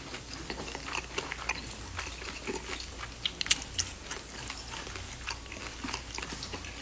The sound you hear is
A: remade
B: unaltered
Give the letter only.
B